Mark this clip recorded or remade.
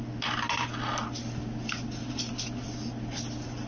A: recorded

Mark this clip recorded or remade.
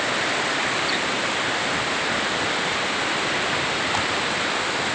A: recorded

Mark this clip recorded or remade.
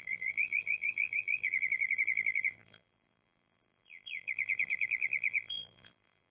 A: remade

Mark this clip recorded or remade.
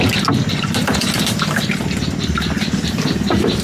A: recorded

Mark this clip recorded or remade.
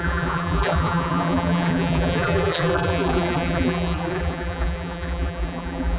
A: remade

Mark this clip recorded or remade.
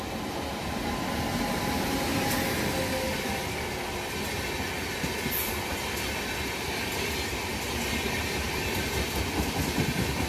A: recorded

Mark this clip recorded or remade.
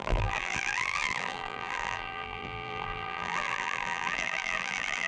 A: remade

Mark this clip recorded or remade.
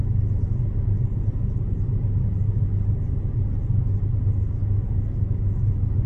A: recorded